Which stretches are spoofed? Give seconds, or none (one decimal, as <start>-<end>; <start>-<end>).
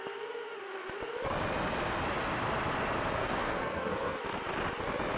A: 3.2-4.2